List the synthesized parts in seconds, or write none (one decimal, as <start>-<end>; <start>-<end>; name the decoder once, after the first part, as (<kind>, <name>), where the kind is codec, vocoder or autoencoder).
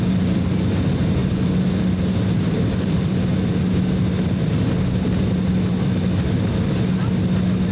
none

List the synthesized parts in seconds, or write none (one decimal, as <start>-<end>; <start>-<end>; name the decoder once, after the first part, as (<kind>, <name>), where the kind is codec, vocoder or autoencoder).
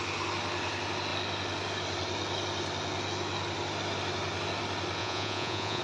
5.0-5.8 (vocoder, Vocos)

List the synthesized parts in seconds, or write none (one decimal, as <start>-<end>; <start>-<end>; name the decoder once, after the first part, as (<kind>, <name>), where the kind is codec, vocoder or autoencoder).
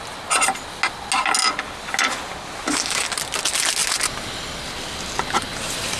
none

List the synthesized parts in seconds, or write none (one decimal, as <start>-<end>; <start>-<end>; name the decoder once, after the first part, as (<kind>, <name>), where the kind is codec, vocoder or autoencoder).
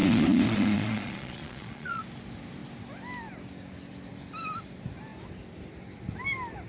0.0-2.0 (vocoder, Vocos)